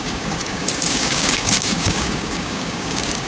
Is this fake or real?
fake